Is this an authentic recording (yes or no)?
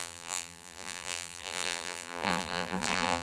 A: no